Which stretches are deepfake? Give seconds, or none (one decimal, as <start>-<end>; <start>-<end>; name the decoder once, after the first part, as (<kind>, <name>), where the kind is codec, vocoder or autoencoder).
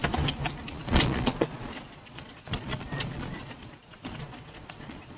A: 0.7-5.2 (vocoder, Vocos)